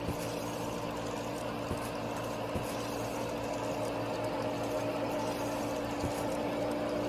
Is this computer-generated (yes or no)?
no